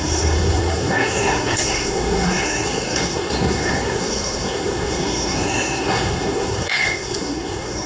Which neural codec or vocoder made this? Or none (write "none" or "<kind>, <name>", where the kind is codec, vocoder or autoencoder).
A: codec, SNAC